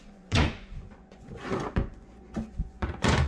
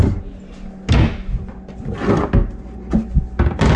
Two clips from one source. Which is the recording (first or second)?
second